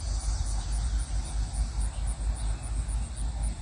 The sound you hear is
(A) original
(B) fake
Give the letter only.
A